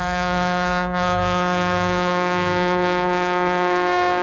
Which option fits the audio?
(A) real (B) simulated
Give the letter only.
B